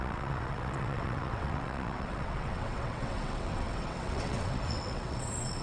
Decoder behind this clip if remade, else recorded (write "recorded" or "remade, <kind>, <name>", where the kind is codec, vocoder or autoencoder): remade, vocoder, WaveNeXt